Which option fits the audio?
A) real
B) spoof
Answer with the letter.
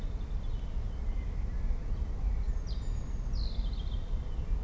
A